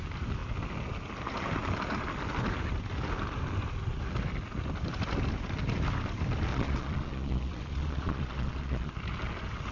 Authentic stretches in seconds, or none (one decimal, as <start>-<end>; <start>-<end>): 0.0-6.5; 8.9-9.7